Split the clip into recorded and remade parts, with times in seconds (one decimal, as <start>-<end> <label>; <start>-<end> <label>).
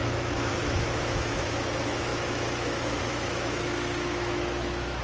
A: 0.0-5.0 remade